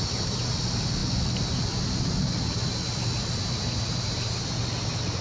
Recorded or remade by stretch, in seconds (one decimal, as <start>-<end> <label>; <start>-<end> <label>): 0.0-5.2 recorded